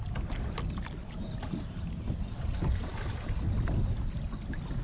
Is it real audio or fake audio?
real